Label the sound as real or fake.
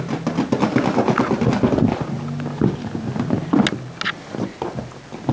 real